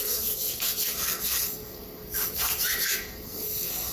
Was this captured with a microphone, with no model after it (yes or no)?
no